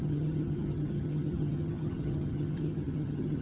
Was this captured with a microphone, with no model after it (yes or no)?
no